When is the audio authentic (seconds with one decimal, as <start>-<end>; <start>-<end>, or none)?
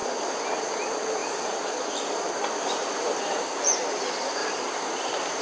0.0-0.6